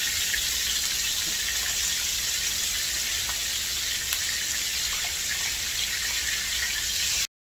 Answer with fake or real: real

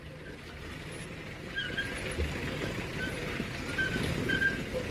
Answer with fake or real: real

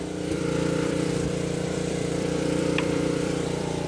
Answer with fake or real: fake